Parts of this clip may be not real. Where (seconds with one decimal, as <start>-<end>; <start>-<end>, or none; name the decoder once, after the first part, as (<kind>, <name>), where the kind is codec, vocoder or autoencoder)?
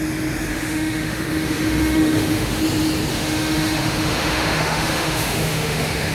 0.5-2.6 (autoencoder, DAC-VAE); 3.1-6.1